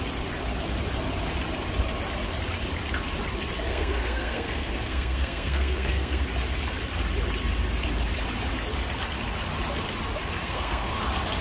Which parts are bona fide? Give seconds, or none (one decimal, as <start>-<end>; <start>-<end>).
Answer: 0.0-3.7; 6.2-10.4; 11.0-11.4